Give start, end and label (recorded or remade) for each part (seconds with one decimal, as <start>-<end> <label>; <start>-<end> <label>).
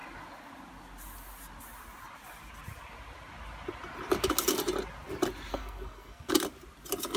0.0-5.5 recorded; 5.5-6.3 remade; 6.3-7.2 recorded